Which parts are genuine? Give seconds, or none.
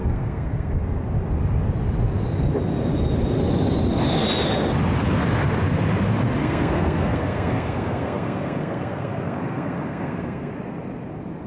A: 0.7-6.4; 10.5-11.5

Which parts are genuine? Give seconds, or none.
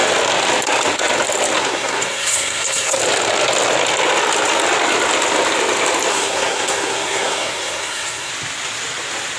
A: 0.0-1.6; 3.0-6.1; 8.3-9.4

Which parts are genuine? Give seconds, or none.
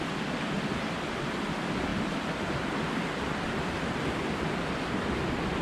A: 0.0-5.6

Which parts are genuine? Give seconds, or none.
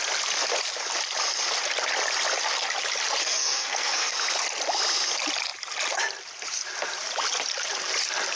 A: 0.0-3.2; 4.1-8.4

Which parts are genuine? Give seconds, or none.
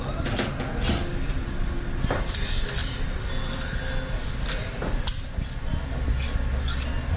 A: 0.0-7.2